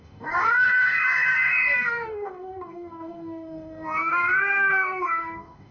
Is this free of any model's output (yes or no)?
no